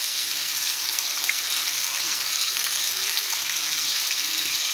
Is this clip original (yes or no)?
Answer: no